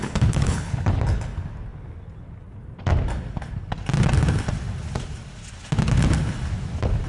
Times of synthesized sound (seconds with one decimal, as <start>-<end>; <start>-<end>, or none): 0.0-1.0